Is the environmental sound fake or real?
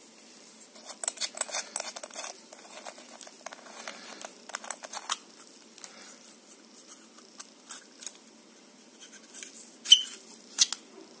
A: real